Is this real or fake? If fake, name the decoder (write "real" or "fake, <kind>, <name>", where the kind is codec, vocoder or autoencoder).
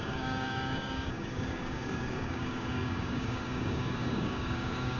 fake, codec, DAC